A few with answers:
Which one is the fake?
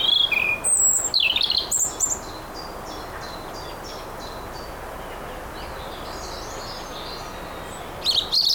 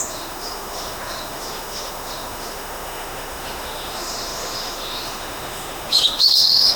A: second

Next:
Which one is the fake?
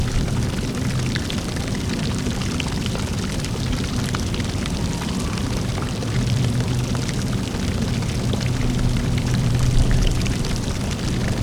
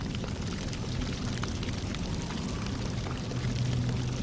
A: first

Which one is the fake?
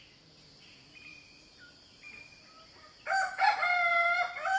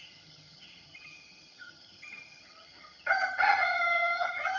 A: second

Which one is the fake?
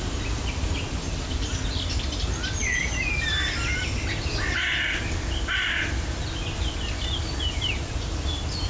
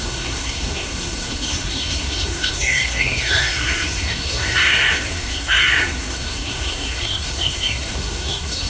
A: second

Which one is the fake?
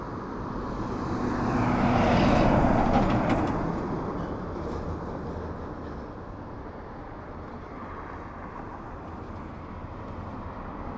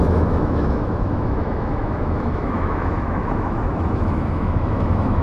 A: second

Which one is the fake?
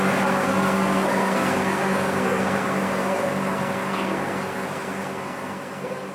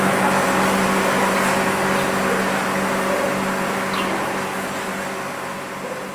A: first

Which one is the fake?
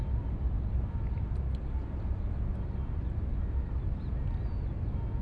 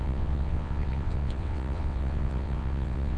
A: second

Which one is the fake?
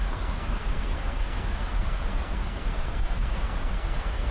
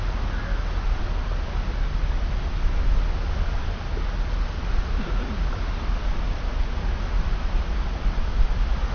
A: first